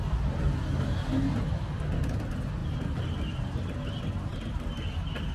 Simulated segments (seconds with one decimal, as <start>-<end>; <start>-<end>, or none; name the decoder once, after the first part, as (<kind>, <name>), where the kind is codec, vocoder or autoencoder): 2.6-3.6 (vocoder, BigVGAN v2)